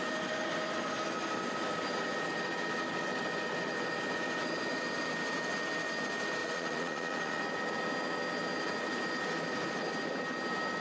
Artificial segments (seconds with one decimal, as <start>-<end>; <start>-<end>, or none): 6.4-7.4